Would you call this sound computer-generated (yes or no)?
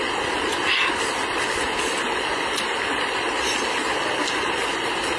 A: no